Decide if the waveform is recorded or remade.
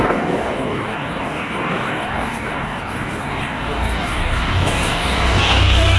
remade